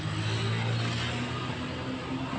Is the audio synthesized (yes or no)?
no